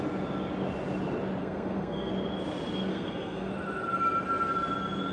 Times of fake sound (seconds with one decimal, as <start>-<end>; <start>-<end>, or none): 1.4-2.1; 2.9-3.5